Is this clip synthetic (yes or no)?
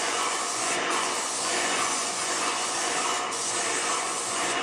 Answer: yes